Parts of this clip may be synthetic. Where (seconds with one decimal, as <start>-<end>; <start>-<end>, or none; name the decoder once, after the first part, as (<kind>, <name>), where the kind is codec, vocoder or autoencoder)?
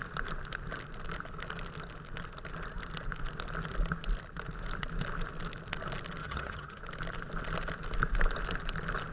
6.2-6.8 (vocoder, HiFi-GAN)